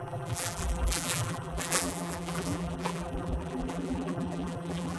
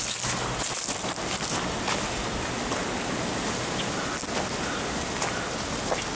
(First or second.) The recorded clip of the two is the second